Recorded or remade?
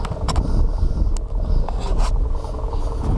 recorded